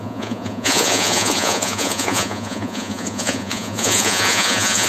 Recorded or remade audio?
remade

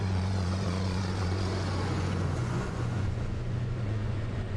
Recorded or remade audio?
remade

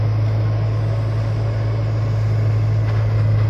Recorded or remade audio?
recorded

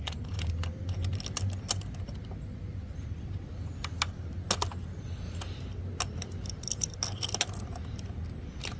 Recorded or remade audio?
recorded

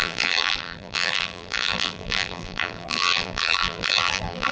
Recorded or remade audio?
remade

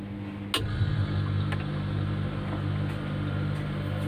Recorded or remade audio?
recorded